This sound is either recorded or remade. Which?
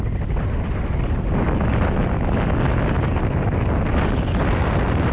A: recorded